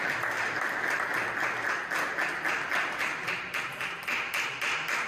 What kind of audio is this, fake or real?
real